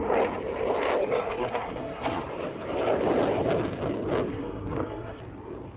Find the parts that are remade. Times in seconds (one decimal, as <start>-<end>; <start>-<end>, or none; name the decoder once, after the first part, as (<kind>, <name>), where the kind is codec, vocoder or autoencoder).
1.0-2.2 (codec, SNAC); 4.3-5.2

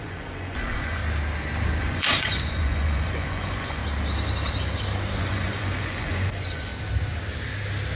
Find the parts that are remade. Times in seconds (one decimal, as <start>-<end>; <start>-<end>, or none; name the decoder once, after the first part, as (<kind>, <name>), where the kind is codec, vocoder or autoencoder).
0.0-1.0 (vocoder, Vocos); 1.8-3.8; 5.2-6.7

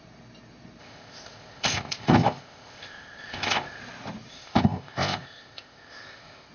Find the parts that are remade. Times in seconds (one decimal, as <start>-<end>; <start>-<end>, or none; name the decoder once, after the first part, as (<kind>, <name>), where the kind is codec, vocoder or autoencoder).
0.8-3.8 (codec, ZipCodec); 4.3-6.5

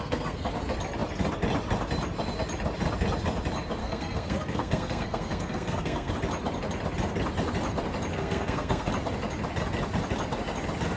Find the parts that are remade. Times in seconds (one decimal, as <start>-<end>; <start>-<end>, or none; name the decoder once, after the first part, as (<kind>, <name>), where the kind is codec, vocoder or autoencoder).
0.0-0.5 (codec, SNAC); 3.8-6.1; 8.1-8.9

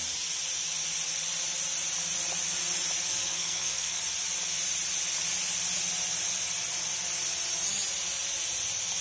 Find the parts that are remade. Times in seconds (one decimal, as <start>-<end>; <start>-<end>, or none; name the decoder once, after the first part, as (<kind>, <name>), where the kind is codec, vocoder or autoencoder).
3.2-4.0 (codec, SNAC)

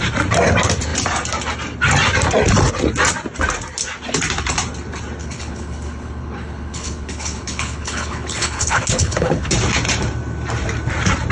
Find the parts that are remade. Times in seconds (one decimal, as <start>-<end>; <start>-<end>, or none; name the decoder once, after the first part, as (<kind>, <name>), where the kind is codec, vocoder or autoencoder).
5.2-9.5 (codec, HILCodec)

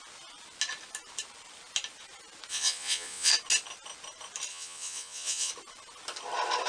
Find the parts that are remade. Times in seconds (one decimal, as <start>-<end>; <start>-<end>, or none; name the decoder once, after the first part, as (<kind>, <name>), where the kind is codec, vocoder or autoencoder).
2.5-3.3 (vocoder, Vocos); 4.5-5.5

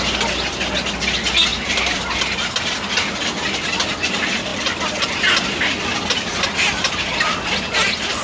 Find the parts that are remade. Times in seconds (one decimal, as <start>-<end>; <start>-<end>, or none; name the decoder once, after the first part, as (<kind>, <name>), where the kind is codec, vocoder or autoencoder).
none